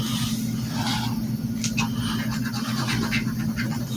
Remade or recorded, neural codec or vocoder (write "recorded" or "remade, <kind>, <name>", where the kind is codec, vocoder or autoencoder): recorded